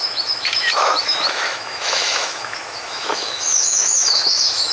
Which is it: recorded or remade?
remade